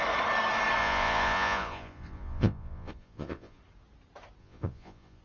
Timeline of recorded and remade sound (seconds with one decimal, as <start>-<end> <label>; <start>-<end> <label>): 0.0-0.8 recorded; 0.8-3.6 remade; 3.6-4.4 recorded; 4.4-5.2 remade

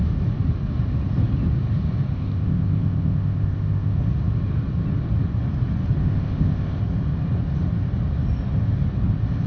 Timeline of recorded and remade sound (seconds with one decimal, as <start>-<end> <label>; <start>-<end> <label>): 0.0-2.1 recorded; 2.1-4.0 remade; 4.0-6.0 recorded; 6.0-6.8 remade; 6.8-9.5 recorded

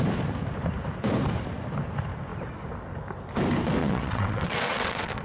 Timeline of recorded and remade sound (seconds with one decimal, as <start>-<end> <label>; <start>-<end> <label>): 0.0-3.8 recorded; 3.8-5.2 remade

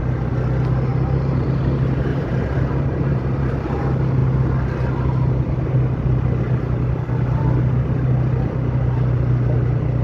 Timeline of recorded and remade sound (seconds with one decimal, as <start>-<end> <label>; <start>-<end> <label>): 0.0-0.9 recorded; 0.9-1.6 remade; 1.6-2.1 recorded; 2.1-3.8 remade; 3.8-10.0 recorded

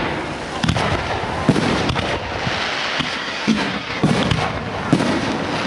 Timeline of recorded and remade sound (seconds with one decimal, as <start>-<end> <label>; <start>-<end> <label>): 0.0-3.1 recorded; 3.1-4.1 remade; 4.1-5.7 recorded

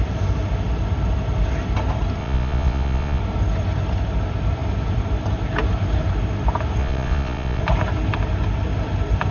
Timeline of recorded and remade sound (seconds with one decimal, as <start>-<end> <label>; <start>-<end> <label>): 0.0-2.2 recorded; 2.2-3.2 remade; 3.2-6.8 recorded; 6.8-7.6 remade; 7.6-9.3 recorded

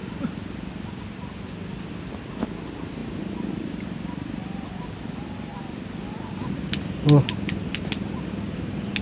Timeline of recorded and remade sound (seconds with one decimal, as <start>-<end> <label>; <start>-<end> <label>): 0.0-9.0 recorded

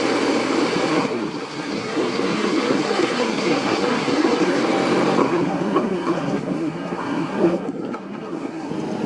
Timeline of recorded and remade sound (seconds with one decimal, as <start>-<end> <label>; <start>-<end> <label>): 0.0-0.9 recorded; 0.9-4.6 remade; 4.6-5.2 recorded; 5.2-8.7 remade; 8.7-9.1 recorded